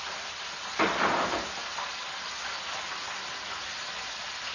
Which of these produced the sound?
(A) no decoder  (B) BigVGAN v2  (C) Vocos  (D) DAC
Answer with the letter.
A